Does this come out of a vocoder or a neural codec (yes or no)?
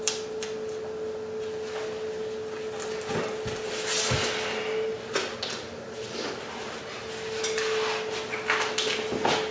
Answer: no